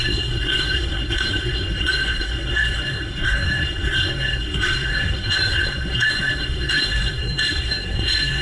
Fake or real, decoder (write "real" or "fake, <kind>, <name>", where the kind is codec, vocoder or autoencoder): fake, codec, SNAC